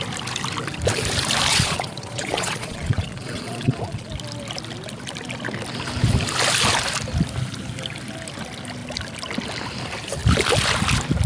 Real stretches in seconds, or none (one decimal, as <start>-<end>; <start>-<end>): 0.0-1.5; 4.1-11.3